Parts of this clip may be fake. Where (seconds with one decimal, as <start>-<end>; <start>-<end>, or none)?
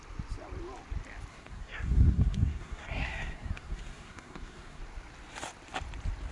1.3-4.8